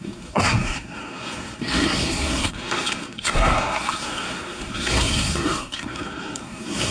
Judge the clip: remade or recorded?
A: remade